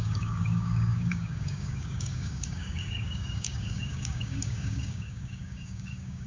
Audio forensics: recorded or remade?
remade